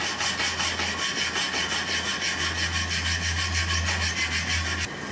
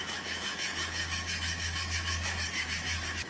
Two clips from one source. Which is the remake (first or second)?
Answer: second